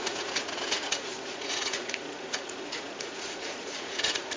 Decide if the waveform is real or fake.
fake